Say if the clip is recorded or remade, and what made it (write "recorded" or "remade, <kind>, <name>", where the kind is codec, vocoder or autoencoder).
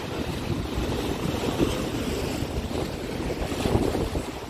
recorded